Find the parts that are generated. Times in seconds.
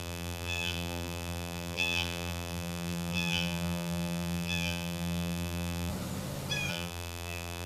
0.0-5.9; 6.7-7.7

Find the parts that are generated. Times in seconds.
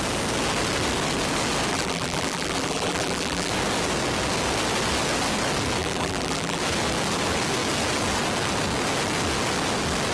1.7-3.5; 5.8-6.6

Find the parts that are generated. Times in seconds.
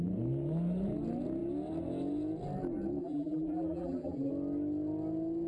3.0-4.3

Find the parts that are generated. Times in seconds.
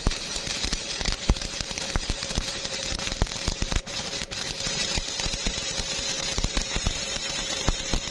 0.0-8.1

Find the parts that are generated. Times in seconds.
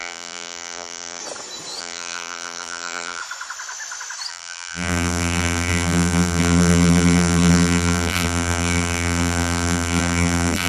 0.0-1.2; 1.8-3.2; 4.3-10.7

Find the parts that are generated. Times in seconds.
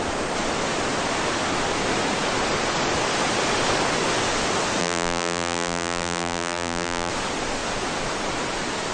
4.8-7.1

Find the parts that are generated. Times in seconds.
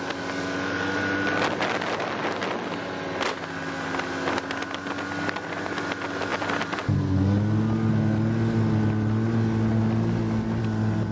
6.3-7.9